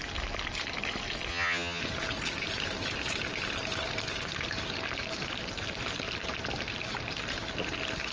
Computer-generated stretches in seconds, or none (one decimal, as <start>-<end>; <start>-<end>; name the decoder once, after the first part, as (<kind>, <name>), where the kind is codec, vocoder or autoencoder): 1.3-1.8 (vocoder, HiFi-GAN)

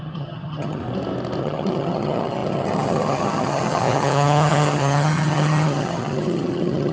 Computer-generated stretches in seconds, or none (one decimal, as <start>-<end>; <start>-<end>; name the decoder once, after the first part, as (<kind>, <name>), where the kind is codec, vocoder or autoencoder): 0.0-0.8 (vocoder, HiFi-GAN); 1.4-6.9